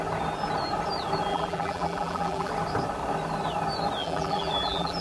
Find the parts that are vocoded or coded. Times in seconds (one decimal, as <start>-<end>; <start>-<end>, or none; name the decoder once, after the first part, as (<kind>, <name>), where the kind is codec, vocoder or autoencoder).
1.3-2.5 (vocoder, BigVGAN v2); 4.0-5.0